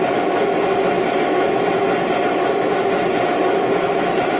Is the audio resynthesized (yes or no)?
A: no